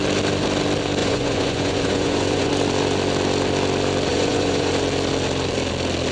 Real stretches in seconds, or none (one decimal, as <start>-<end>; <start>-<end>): 0.0-1.0; 2.5-4.1; 4.7-6.1